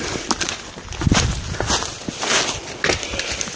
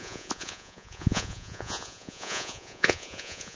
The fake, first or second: second